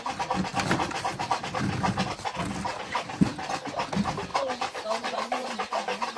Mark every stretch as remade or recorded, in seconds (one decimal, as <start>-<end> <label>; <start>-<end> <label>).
0.0-4.3 recorded; 4.3-6.2 remade